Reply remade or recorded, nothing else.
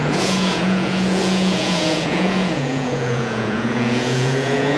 remade